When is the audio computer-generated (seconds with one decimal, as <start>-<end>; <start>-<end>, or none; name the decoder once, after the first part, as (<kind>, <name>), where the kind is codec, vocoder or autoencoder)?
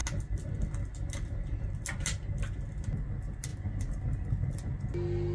none